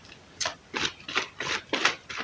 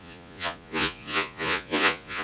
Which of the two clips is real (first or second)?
first